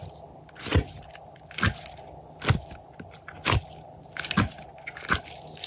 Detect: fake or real real